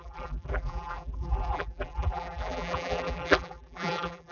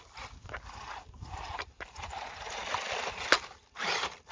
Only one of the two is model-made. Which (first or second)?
first